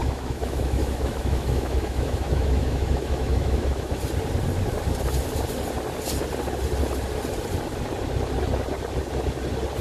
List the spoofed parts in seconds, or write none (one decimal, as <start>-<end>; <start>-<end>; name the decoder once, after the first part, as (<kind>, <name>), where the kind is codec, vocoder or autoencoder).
0.0-4.0 (autoencoder, DAC-VAE)